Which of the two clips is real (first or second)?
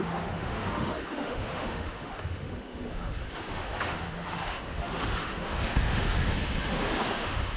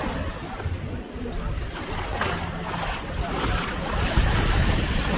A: second